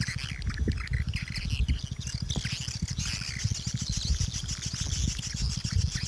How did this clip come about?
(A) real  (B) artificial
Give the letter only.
A